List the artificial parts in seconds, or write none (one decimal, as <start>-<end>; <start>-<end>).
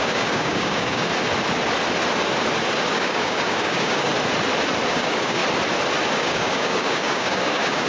0.0-1.1; 2.9-4.1; 4.9-5.4; 6.1-7.9